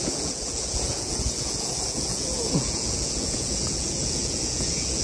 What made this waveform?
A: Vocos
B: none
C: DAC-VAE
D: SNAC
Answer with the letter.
A